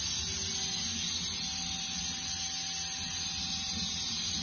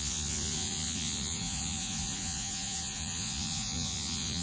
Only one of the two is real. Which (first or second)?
first